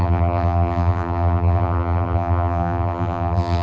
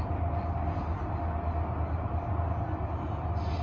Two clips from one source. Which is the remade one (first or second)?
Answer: first